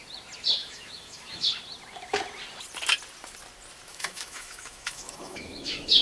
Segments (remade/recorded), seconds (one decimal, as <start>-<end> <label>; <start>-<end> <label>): 0.0-0.6 recorded; 0.6-1.5 remade; 1.5-3.9 recorded; 3.9-6.0 remade